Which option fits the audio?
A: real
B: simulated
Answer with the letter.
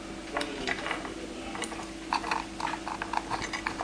A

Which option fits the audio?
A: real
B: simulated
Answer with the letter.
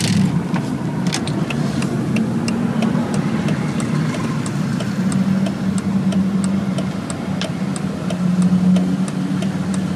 A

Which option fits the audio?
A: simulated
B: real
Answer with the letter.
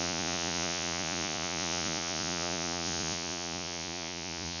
A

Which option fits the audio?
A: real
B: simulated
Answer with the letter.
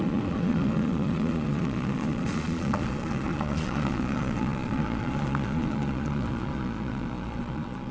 B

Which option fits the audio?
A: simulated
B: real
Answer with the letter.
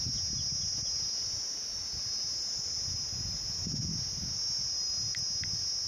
B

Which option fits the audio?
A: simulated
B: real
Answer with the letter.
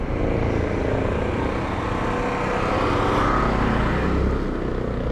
B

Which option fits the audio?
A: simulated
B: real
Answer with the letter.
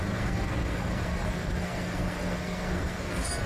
A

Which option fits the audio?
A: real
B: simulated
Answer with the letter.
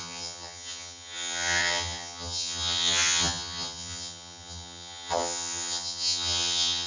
B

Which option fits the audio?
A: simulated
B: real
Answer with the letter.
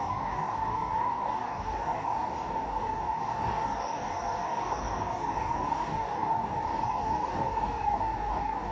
A